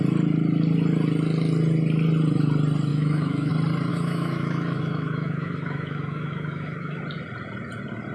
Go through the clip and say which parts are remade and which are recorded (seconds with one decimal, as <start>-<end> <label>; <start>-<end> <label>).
0.0-2.9 recorded; 2.9-3.5 remade; 3.5-3.9 recorded; 3.9-7.0 remade; 7.0-8.1 recorded